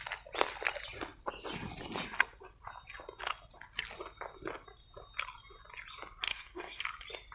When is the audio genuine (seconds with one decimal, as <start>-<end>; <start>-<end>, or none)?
0.0-6.3; 6.8-7.3